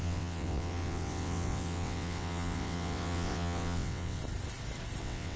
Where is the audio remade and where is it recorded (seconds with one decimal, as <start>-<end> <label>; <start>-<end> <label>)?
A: 0.0-4.2 remade; 4.2-5.0 recorded; 5.0-5.4 remade